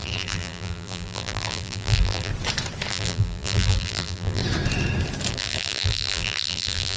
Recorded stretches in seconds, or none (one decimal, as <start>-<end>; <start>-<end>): 2.3-2.9; 4.4-5.3